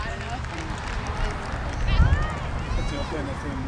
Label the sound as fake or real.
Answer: real